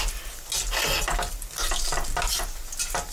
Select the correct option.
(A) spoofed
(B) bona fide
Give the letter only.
B